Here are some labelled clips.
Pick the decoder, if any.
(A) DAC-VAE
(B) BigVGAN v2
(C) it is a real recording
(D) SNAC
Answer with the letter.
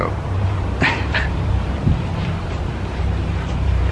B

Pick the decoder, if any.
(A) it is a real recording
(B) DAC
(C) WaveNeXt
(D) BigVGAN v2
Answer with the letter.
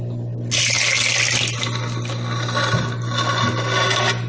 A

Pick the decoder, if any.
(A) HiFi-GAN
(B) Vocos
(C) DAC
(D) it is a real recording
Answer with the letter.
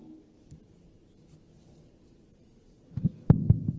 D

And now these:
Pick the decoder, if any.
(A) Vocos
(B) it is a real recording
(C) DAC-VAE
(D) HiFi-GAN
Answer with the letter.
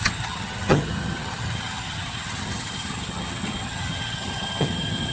D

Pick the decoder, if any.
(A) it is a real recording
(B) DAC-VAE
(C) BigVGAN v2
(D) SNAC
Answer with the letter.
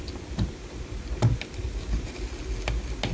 A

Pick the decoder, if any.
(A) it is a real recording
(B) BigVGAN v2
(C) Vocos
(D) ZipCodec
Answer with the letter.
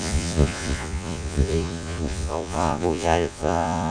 C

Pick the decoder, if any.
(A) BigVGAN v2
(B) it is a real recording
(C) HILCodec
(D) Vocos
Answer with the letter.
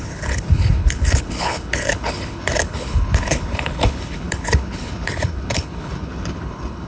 C